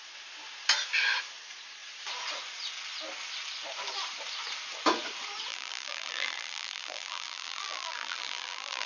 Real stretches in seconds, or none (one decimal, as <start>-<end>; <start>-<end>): 0.0-5.5